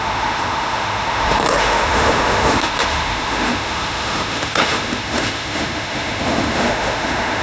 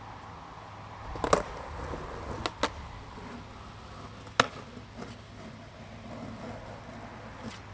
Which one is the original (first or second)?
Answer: second